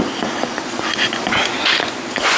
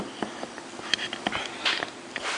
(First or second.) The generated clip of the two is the first